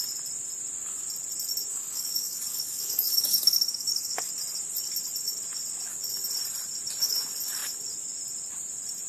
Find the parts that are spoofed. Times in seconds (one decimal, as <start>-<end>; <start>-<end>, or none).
1.7-4.3